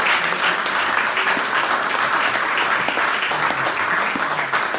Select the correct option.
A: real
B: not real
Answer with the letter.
A